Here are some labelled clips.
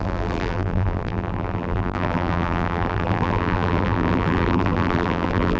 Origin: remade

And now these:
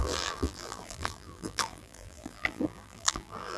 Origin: remade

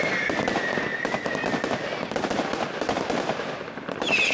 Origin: remade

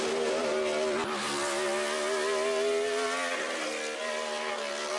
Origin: recorded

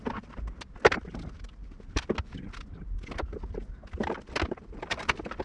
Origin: recorded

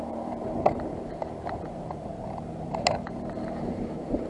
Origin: remade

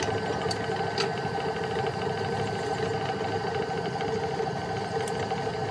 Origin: recorded